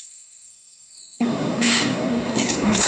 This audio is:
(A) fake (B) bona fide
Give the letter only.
A